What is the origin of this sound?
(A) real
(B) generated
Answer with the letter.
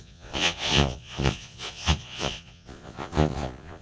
B